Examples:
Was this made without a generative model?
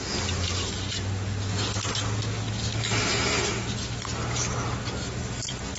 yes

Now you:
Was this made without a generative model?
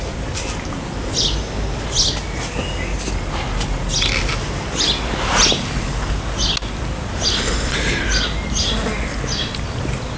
yes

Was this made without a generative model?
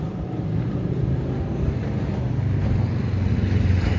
yes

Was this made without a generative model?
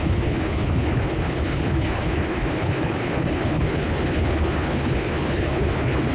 no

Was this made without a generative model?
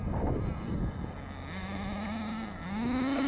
yes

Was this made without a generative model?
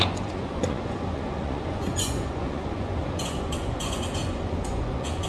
no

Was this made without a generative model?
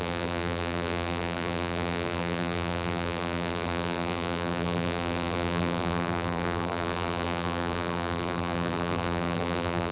no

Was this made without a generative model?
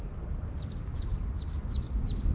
yes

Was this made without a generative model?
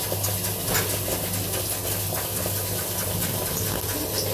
yes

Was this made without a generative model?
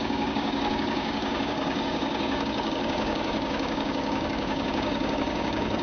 no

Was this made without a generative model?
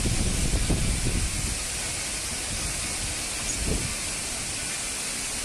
yes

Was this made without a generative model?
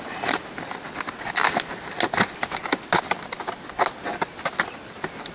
yes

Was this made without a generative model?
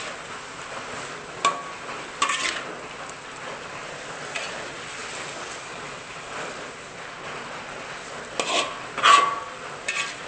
yes